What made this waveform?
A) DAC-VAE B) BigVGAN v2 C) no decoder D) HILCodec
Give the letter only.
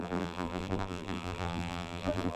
B